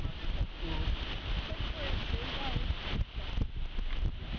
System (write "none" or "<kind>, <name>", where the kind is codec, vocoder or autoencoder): none